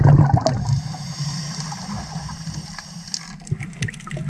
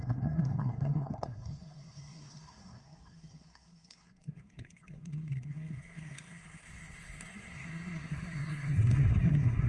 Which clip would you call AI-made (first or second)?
second